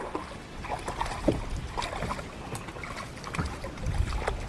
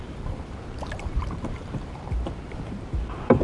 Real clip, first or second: first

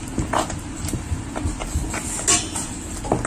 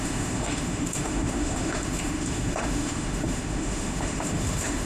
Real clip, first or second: first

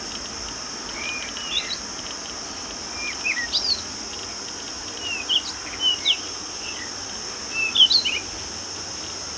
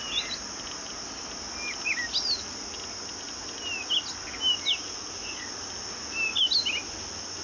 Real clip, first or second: second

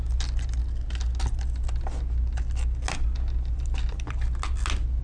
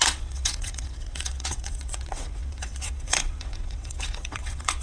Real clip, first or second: first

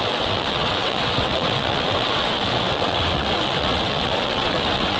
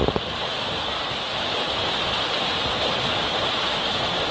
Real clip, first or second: second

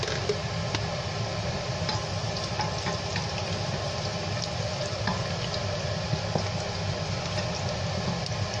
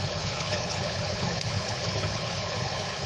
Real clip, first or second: first